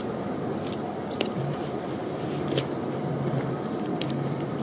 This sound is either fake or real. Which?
real